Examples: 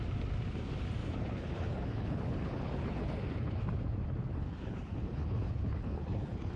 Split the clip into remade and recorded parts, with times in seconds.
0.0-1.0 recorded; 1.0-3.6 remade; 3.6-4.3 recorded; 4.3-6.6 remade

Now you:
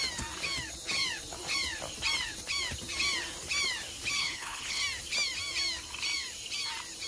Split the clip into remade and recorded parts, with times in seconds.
0.0-4.2 recorded; 4.2-4.8 remade; 4.8-7.1 recorded

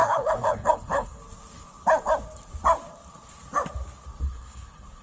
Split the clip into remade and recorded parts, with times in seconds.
0.0-1.2 remade; 1.2-4.2 recorded; 4.2-5.0 remade

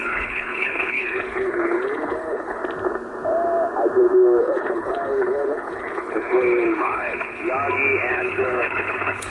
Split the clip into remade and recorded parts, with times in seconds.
0.0-2.6 remade; 2.6-4.4 recorded; 4.4-7.5 remade; 7.5-8.1 recorded; 8.1-9.3 remade

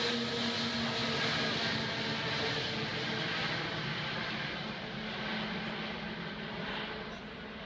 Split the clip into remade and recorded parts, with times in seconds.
0.0-7.7 recorded

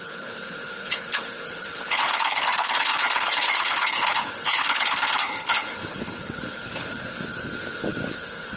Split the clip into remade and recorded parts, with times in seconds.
0.0-8.6 remade

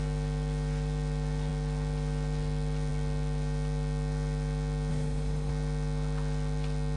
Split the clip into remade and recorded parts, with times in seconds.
0.0-4.9 recorded; 4.9-5.5 remade; 5.5-7.0 recorded

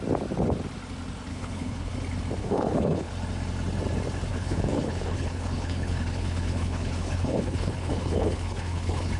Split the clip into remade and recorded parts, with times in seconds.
0.0-1.3 recorded; 1.3-1.9 remade; 1.9-2.4 recorded; 2.4-3.1 remade; 3.1-4.3 recorded; 4.3-9.2 remade